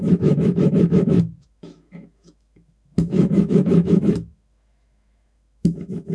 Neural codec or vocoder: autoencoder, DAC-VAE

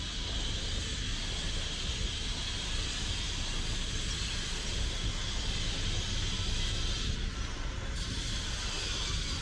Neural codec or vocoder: none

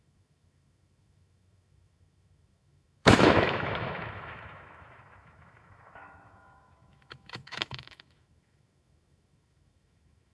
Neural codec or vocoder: autoencoder, DAC-VAE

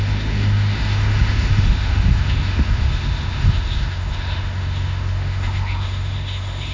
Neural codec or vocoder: autoencoder, DAC-VAE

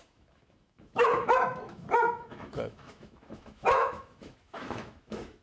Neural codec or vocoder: autoencoder, DAC-VAE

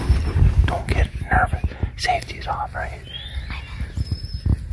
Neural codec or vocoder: none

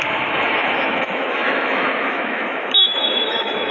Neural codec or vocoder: autoencoder, DAC-VAE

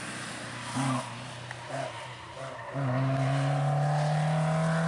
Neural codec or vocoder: none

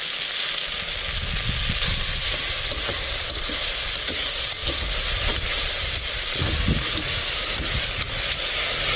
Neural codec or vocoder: none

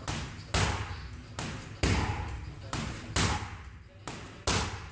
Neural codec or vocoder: none